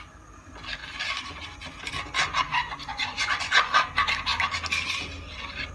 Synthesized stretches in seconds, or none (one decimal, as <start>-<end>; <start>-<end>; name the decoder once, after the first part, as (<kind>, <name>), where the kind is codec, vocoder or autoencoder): 2.5-3.7 (vocoder, Vocos)